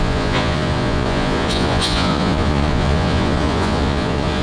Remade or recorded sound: remade